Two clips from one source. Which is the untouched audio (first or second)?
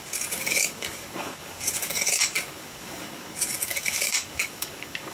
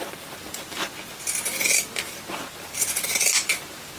second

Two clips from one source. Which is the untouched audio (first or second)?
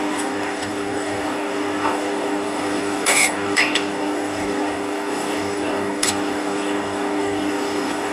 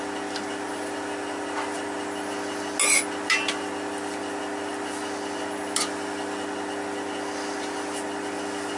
second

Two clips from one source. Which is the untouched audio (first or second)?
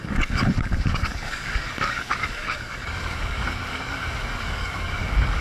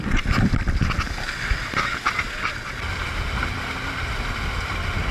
second